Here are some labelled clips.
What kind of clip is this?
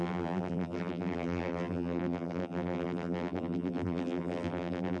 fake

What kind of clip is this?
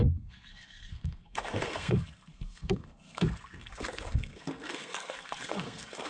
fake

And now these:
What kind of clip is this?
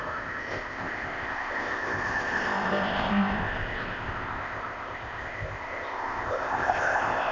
fake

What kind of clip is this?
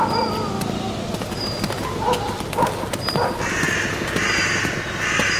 real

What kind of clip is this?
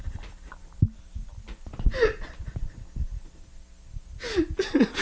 real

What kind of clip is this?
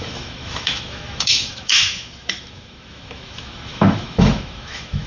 fake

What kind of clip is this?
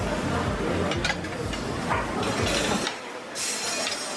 real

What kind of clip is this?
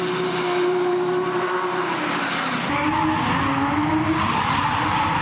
real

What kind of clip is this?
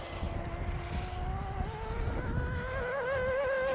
real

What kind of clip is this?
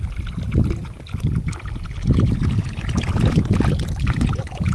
real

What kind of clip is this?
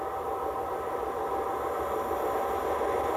real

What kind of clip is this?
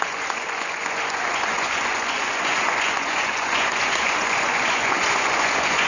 fake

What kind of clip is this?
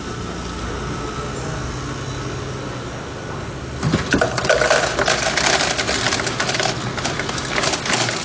real